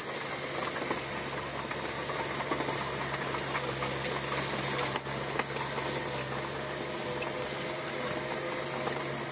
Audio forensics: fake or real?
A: real